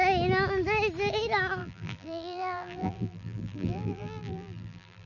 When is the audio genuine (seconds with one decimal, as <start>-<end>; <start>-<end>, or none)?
0.0-1.6